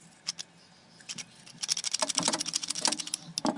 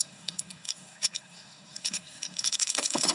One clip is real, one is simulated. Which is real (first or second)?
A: first